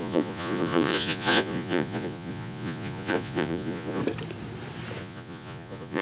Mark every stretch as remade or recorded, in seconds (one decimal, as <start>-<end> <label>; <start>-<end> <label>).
0.0-4.0 remade; 4.0-5.0 recorded; 5.0-6.0 remade